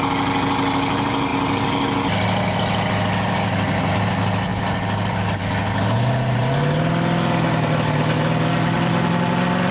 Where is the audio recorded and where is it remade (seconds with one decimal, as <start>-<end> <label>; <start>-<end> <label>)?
0.0-9.7 recorded